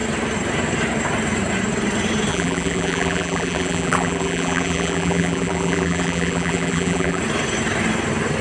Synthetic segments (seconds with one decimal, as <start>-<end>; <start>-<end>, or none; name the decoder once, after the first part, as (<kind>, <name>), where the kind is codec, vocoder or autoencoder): 2.3-7.2 (vocoder, BigVGAN v2)